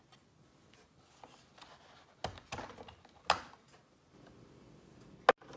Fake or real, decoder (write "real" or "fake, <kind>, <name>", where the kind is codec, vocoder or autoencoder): real